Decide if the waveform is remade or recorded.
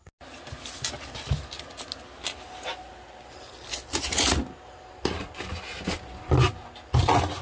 recorded